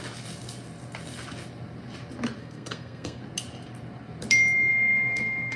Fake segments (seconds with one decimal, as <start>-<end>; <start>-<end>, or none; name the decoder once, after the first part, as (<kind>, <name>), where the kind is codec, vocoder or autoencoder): 2.4-3.2 (codec, SNAC); 4.7-5.6